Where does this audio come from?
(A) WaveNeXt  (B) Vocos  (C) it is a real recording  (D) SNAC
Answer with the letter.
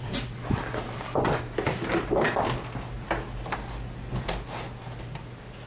C